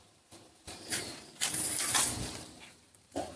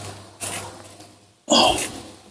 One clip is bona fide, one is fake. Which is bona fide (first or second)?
second